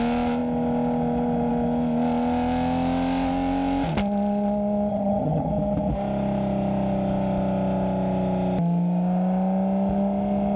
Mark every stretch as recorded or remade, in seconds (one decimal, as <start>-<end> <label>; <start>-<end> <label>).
0.0-4.9 recorded; 4.9-5.5 remade; 5.5-10.6 recorded